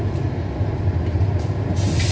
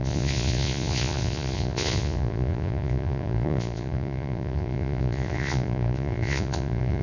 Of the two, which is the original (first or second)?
first